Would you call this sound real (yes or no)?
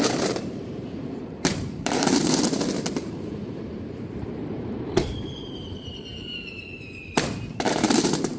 no